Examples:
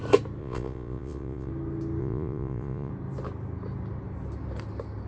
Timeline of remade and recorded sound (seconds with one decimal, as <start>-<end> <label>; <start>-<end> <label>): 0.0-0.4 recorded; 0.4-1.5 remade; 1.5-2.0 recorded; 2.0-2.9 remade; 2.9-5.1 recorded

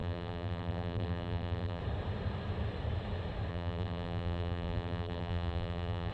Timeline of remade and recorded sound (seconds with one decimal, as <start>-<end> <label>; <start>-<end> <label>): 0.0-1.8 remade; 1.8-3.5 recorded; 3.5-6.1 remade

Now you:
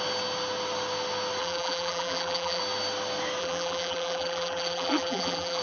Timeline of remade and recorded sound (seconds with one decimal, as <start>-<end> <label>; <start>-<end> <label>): 0.0-1.4 recorded; 1.4-2.6 remade; 2.6-3.4 recorded; 3.4-5.6 remade